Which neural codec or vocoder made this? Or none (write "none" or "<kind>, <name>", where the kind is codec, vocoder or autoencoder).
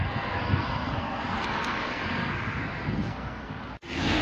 codec, SNAC